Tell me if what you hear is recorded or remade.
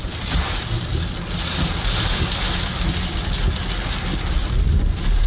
recorded